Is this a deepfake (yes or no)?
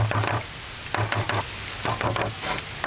no